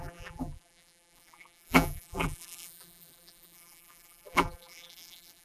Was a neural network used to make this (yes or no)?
yes